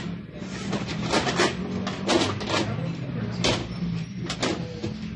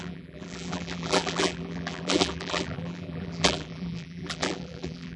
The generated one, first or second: second